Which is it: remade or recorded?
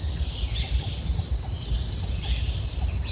recorded